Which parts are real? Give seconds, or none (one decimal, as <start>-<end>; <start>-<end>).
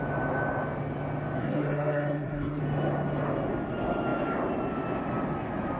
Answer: 0.0-1.4; 2.6-5.8